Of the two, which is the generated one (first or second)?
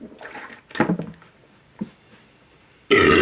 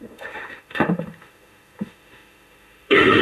second